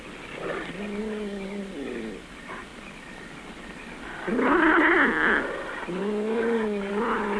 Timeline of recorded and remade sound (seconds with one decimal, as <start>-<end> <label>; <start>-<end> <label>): 0.0-1.0 recorded; 1.0-1.6 remade; 1.6-6.0 recorded; 6.0-6.9 remade; 6.9-7.4 recorded